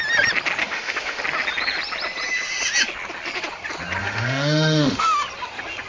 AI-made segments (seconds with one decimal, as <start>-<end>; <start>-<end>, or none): 0.6-1.2; 4.0-5.2